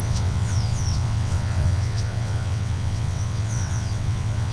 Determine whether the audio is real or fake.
fake